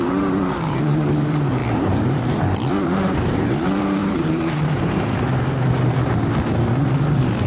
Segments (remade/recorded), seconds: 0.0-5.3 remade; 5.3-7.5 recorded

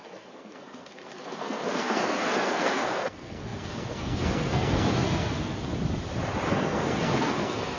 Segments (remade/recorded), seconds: 0.0-5.7 remade; 5.7-6.5 recorded; 6.5-7.8 remade

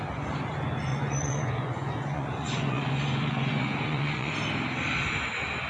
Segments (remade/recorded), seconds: 0.0-0.9 recorded; 0.9-4.3 remade; 4.3-5.7 recorded

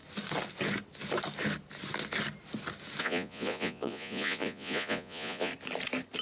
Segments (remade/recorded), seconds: 0.0-3.0 recorded; 3.0-5.5 remade; 5.5-6.2 recorded

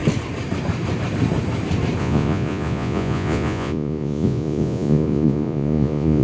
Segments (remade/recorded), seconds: 0.0-2.0 recorded; 2.0-6.2 remade

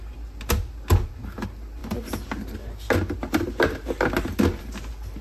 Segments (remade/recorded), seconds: 0.0-5.2 recorded